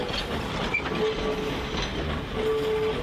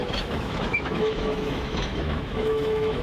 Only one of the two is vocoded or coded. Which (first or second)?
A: second